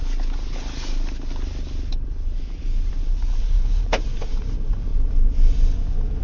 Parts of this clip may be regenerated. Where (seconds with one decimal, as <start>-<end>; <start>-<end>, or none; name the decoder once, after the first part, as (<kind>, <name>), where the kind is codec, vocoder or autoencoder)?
2.9-4.9 (vocoder, BigVGAN v2)